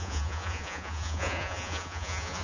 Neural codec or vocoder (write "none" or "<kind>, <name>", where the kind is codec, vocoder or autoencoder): vocoder, Vocos